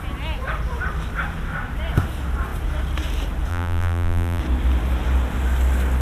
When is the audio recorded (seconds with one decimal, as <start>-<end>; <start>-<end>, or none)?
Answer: 0.0-3.5; 4.4-6.0